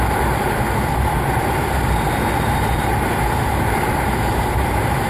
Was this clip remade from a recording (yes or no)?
yes